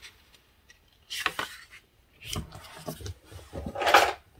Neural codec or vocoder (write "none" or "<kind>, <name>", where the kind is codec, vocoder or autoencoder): none